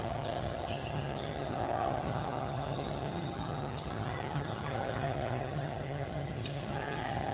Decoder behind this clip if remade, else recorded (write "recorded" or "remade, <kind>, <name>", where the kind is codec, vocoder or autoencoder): remade, vocoder, HiFi-GAN